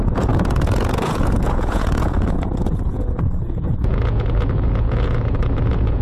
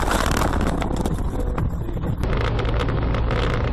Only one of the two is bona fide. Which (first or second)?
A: second